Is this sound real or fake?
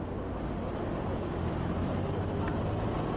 real